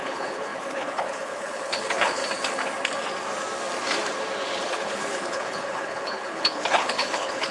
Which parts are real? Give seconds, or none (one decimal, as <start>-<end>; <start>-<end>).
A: 2.2-4.6